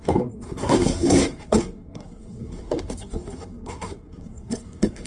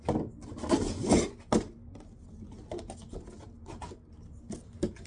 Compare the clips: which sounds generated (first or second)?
first